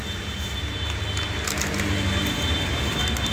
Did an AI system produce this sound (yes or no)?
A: no